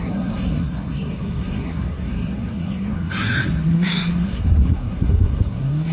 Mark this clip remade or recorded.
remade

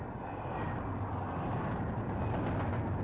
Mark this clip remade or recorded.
recorded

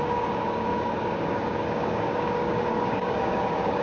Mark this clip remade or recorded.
remade